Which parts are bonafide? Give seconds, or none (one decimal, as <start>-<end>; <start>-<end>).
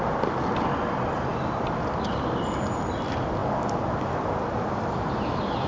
0.0-5.7